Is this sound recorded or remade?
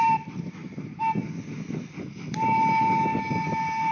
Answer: recorded